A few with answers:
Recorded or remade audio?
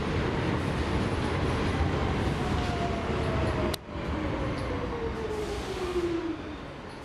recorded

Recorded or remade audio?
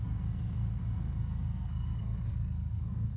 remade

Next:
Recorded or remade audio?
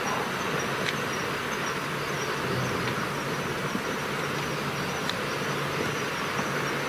recorded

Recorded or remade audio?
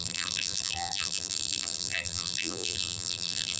remade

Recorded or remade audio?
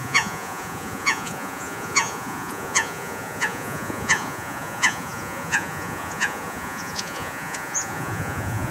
remade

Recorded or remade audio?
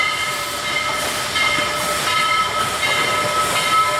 recorded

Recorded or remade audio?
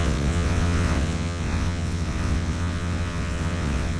remade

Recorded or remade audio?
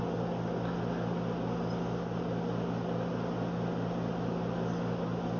recorded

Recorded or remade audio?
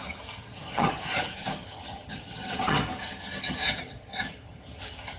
remade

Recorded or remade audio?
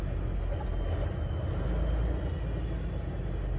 recorded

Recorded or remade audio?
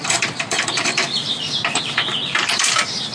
remade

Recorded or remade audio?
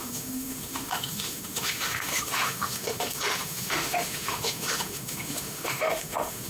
remade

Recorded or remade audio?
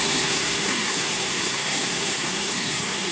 remade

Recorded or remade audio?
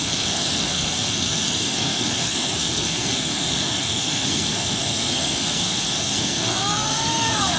remade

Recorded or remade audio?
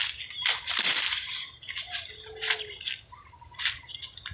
recorded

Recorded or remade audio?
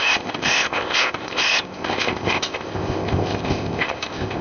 remade